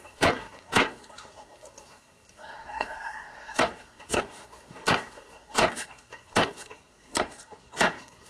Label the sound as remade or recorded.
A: remade